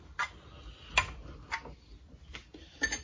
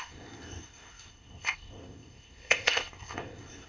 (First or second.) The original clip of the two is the first